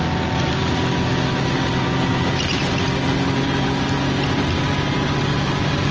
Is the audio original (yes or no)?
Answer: yes